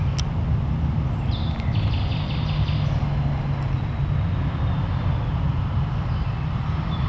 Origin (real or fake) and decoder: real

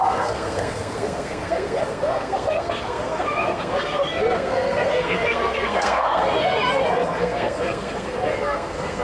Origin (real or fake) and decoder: fake, codec, SNAC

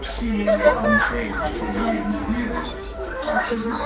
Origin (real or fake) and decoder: fake, codec, SNAC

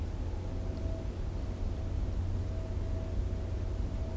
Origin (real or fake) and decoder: real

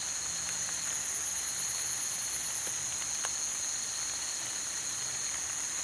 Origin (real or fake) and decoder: real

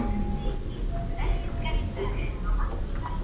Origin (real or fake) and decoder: real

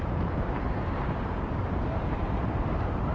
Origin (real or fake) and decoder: fake, vocoder, BigVGAN v2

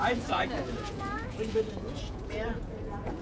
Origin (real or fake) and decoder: fake, vocoder, Vocos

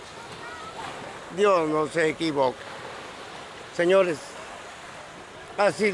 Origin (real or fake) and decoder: real